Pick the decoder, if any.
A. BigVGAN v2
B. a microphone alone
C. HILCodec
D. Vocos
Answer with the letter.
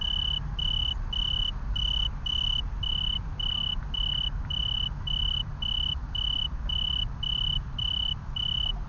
B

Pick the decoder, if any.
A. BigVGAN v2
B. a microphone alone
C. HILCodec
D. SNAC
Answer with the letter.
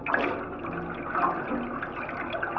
B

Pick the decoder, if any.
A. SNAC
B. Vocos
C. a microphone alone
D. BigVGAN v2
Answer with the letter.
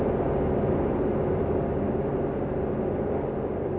C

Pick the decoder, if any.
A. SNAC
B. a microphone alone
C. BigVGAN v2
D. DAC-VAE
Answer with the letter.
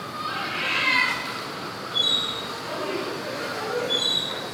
B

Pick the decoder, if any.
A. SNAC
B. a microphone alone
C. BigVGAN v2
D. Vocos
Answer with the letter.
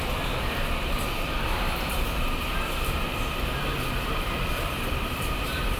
C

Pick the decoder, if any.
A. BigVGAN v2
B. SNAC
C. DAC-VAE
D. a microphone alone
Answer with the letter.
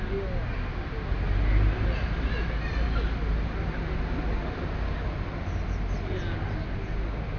D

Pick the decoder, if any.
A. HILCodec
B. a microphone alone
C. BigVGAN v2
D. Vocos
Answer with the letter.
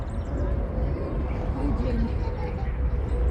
C